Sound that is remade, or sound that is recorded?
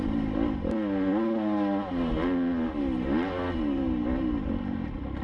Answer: recorded